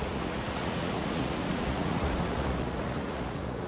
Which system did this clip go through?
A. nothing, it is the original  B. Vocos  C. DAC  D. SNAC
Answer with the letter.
B